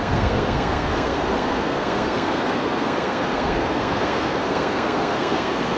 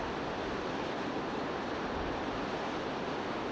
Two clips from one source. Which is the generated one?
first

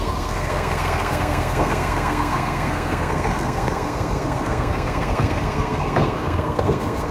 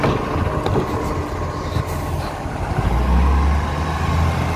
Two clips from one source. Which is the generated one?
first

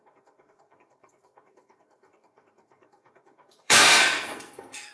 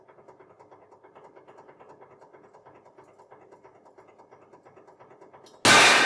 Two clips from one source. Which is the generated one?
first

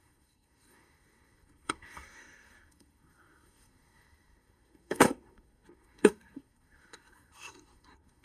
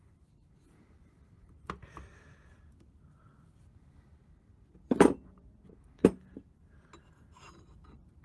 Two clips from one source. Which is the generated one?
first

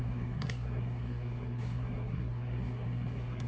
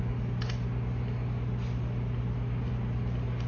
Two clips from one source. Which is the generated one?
first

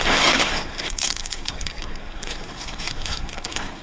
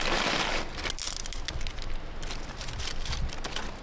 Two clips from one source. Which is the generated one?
first